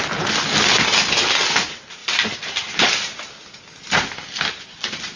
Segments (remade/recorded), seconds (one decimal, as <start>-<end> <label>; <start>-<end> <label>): 0.0-5.2 recorded